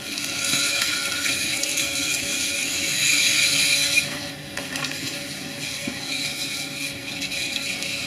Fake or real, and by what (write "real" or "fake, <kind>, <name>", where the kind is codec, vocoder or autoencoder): fake, codec, SNAC